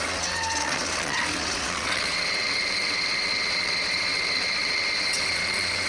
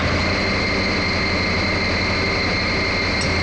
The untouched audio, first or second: second